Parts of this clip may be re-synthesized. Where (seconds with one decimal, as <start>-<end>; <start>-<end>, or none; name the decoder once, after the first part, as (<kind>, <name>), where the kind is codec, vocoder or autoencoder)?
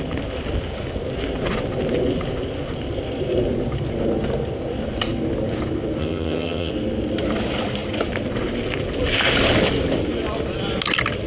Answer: 6.0-6.7 (vocoder, HiFi-GAN)